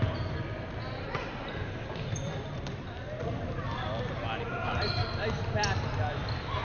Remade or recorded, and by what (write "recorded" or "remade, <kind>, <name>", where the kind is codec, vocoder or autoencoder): recorded